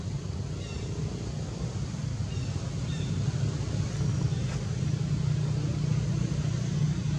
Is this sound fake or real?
real